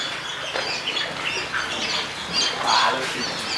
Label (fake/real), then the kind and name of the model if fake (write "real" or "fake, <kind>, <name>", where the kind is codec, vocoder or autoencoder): real